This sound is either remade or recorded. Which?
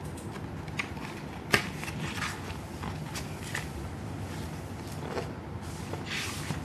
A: recorded